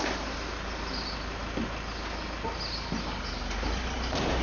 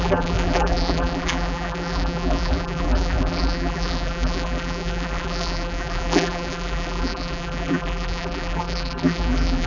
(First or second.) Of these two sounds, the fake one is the second